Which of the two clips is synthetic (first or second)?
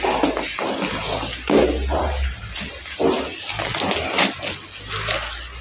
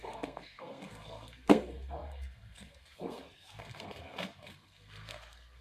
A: second